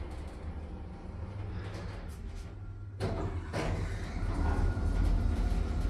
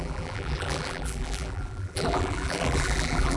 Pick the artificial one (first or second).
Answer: second